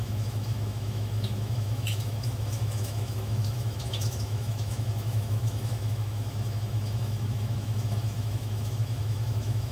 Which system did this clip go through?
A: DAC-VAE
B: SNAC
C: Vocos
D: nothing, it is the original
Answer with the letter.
A